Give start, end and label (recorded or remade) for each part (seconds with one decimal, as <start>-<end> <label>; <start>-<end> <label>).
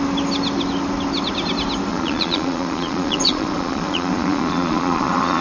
0.0-1.9 recorded; 1.9-5.4 remade